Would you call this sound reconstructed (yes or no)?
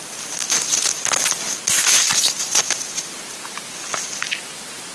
no